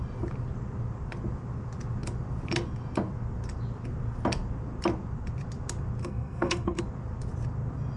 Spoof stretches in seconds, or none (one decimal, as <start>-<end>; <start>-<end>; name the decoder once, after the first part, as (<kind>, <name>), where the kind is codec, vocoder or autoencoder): 6.0-6.8 (codec, SNAC)

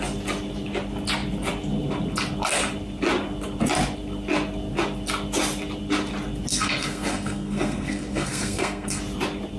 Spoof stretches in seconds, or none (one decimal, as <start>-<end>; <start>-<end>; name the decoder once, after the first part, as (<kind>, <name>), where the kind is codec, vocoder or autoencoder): 6.5-9.0 (codec, SNAC)

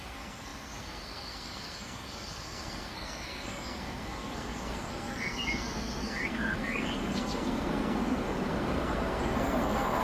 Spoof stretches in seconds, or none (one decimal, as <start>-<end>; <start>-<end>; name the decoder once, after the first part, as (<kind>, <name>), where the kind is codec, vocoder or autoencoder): 0.0-10.0 (codec, SNAC)

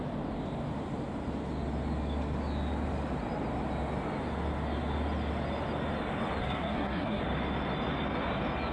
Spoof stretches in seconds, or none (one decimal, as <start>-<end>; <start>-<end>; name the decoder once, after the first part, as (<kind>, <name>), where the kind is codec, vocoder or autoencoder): 6.4-7.2 (codec, SNAC)

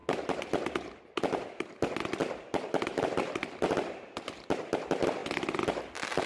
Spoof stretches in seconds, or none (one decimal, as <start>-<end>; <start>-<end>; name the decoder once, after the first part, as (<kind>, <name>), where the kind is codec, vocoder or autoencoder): none